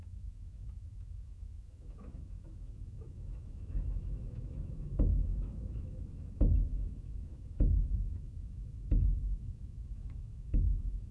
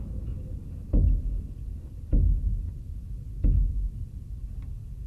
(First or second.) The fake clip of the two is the first